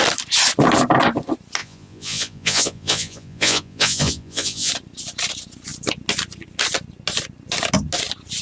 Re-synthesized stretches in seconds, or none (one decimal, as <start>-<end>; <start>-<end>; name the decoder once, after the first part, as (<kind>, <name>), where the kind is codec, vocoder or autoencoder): 1.6-4.7 (vocoder, Vocos)